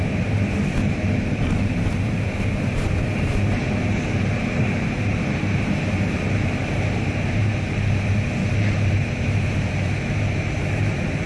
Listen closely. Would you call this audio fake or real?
fake